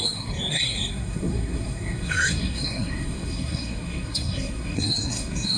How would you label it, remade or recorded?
remade